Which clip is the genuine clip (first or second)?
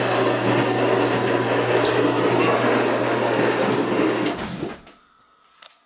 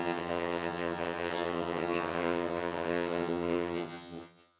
first